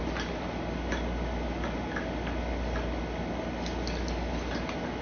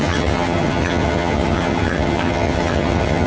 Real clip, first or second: first